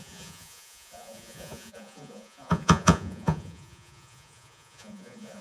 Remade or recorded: remade